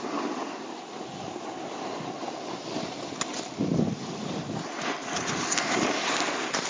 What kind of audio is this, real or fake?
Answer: real